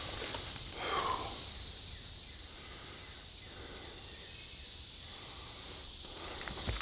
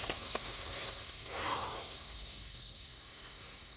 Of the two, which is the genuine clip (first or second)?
first